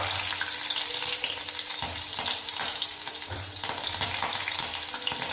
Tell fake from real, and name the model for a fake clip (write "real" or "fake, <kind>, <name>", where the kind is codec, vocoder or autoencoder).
real